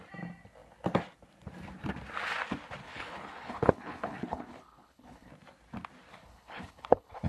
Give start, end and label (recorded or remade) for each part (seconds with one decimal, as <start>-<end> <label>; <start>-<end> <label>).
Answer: 0.0-2.8 recorded; 2.8-5.3 remade; 5.3-6.1 recorded; 6.1-7.3 remade